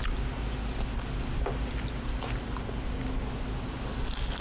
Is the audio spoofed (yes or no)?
no